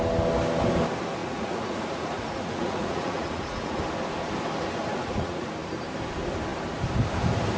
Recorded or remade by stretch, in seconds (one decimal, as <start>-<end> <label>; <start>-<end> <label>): 0.0-1.2 recorded; 1.2-3.8 remade; 3.8-4.9 recorded; 4.9-5.5 remade; 5.5-7.6 recorded